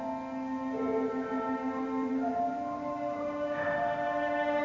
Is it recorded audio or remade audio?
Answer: recorded